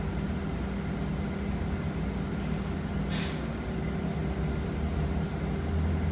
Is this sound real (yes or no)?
yes